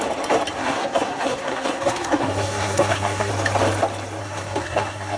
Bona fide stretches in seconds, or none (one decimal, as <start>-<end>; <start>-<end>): 0.0-0.6; 3.3-4.2